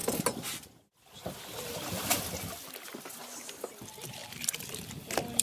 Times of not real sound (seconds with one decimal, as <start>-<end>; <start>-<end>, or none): none